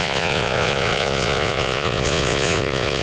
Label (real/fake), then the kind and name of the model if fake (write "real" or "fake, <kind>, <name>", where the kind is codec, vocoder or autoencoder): fake, vocoder, Vocos